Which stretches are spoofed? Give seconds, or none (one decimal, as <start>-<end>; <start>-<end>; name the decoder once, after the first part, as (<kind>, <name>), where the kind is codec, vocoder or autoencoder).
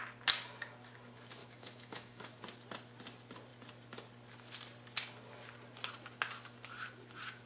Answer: 1.4-2.4 (autoencoder, DAC-VAE)